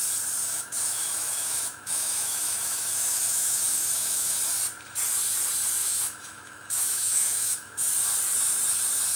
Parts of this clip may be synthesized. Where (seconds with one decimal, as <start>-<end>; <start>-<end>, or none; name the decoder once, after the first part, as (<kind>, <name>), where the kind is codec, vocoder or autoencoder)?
0.4-4.4 (autoencoder, DAC-VAE); 5.8-7.9